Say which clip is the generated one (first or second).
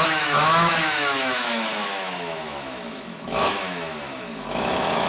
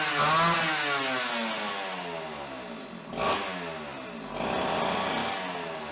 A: first